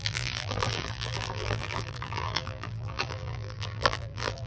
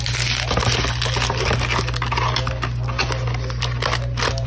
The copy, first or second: first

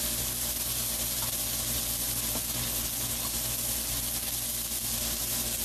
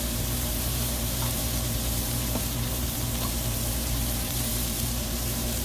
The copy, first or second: second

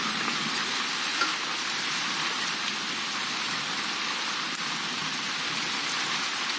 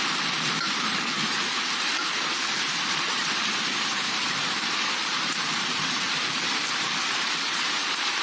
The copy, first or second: second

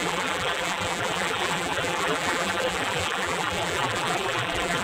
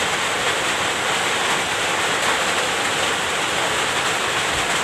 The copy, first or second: first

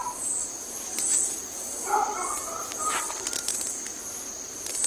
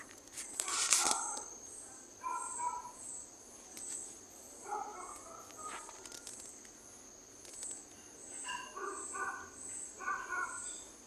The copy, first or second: first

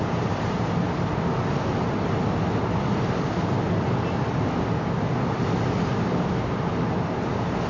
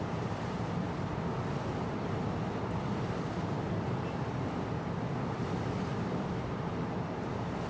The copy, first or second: second